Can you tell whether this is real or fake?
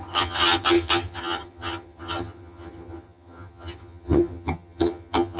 fake